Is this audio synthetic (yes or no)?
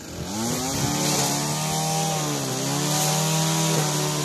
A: no